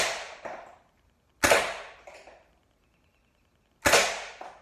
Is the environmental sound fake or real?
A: real